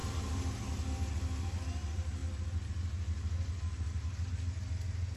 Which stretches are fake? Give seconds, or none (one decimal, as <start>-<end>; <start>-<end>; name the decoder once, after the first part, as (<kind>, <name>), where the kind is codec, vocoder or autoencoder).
none